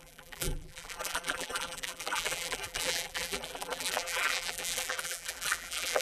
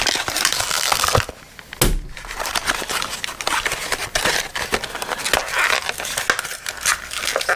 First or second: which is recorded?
second